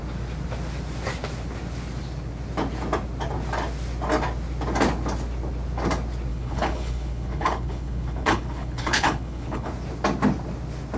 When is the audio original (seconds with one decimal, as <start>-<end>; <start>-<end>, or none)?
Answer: 0.0-6.3; 9.7-11.0